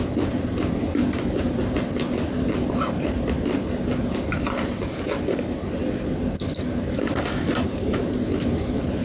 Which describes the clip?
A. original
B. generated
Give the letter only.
A